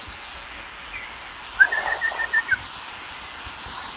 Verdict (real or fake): real